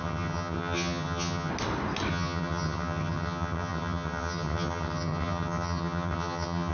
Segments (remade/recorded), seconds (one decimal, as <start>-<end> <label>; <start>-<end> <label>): 0.0-1.5 remade; 1.5-2.1 recorded; 2.1-6.7 remade